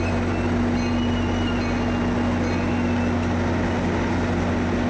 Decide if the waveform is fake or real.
real